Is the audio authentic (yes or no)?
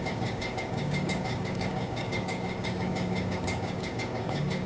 no